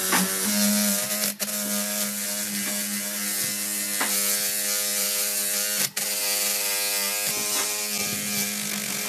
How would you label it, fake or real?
real